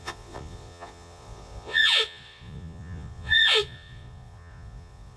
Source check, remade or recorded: remade